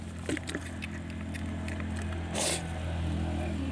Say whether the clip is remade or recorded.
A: recorded